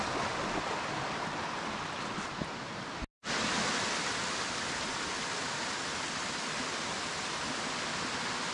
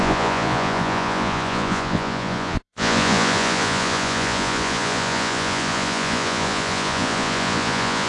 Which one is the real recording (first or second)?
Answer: first